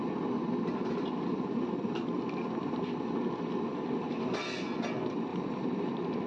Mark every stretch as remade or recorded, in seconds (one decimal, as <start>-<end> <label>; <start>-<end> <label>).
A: 0.0-5.3 recorded; 5.3-6.3 remade